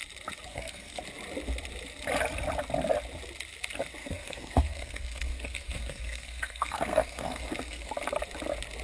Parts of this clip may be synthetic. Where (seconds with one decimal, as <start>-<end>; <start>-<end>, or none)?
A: 0.5-1.0; 4.0-7.9